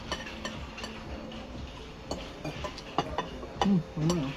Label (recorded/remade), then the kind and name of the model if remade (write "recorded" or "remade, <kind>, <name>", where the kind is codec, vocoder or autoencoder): recorded